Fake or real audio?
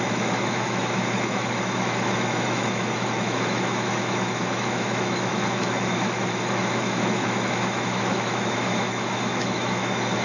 fake